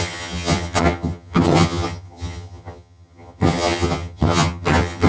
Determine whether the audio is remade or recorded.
remade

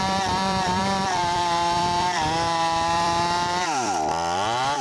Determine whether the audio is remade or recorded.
remade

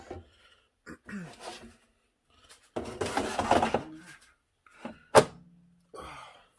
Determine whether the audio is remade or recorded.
recorded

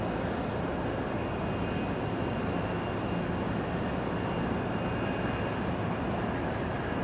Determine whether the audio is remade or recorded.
recorded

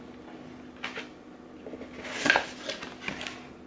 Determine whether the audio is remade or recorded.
recorded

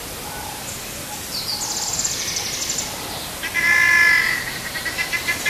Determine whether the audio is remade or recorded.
recorded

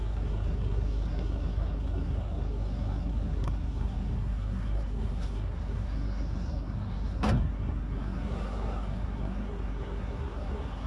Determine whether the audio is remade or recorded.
remade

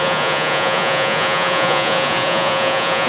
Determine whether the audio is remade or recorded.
remade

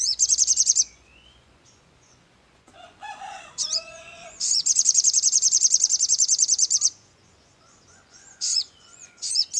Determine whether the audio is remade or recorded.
remade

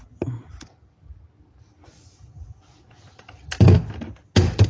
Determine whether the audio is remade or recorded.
recorded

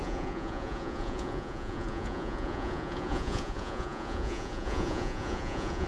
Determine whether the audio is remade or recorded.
remade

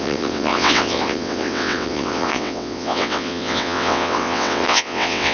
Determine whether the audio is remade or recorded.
remade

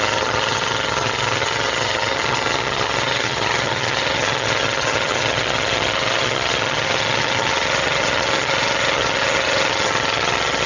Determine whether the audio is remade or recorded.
remade